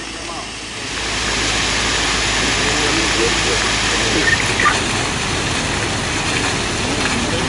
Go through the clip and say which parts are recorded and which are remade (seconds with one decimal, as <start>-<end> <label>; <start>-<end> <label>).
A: 0.0-7.5 recorded